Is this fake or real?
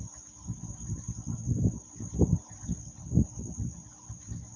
real